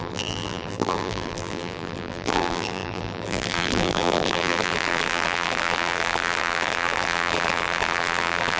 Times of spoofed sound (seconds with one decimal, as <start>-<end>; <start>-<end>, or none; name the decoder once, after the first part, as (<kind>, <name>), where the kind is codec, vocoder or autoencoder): 0.0-8.6 (vocoder, BigVGAN v2)